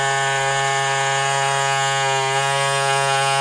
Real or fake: real